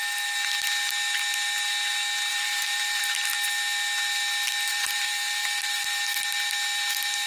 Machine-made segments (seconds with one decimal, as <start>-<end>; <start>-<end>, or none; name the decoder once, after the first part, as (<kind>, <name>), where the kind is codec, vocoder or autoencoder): 2.3-3.0 (vocoder, BigVGAN v2); 4.7-6.0